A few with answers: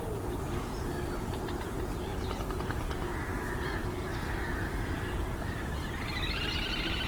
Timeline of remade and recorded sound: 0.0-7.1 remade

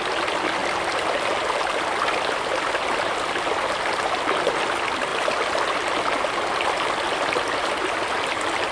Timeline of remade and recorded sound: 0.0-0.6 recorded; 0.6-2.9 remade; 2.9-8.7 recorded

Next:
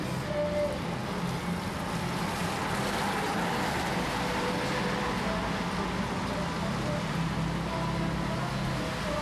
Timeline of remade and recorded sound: 0.0-9.2 recorded

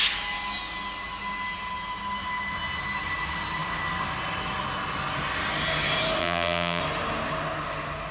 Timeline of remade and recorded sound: 0.0-6.2 recorded; 6.2-6.8 remade; 6.8-8.1 recorded

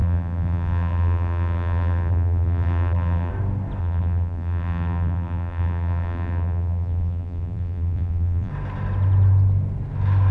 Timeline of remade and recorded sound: 0.0-3.3 remade; 3.3-3.8 recorded; 3.8-8.5 remade; 8.5-10.3 recorded

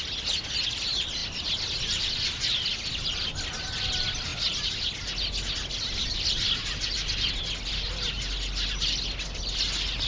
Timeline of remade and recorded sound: 0.0-10.1 recorded

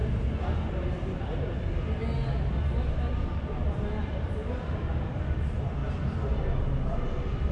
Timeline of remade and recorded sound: 0.0-7.5 recorded

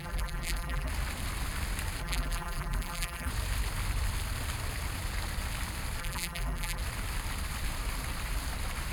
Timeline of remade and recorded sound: 0.0-0.9 remade; 0.9-2.0 recorded; 2.0-3.3 remade; 3.3-6.0 recorded; 6.0-6.8 remade; 6.8-8.9 recorded